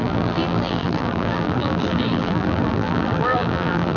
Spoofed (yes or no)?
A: yes